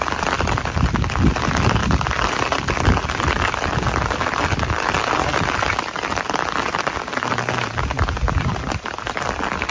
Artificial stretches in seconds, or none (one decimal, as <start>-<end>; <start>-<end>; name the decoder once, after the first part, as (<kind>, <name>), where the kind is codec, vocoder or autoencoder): none